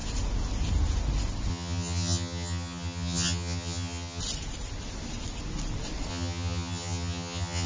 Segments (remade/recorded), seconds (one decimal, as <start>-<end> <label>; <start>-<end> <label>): 0.0-1.5 recorded; 1.5-4.2 remade; 4.2-6.1 recorded; 6.1-7.7 remade